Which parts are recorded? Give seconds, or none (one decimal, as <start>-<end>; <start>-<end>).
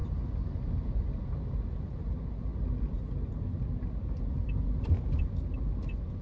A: 0.0-6.2